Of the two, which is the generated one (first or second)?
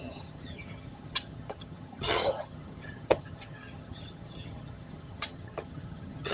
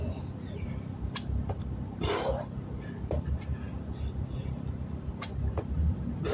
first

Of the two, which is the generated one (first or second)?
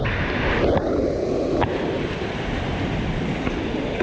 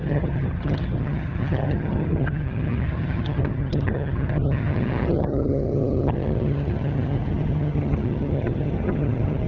second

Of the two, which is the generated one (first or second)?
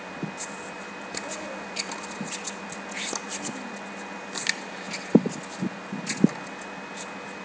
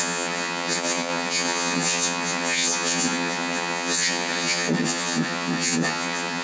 second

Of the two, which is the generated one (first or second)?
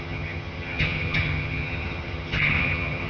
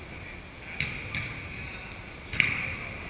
first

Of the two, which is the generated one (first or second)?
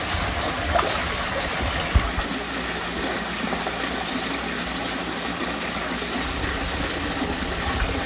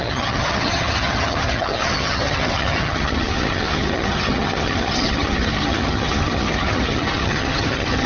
second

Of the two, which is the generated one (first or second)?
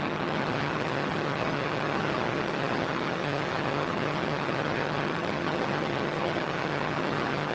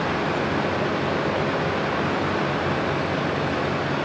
first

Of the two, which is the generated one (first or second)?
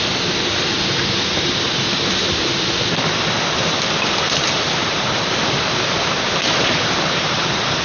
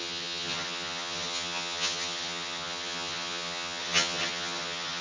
second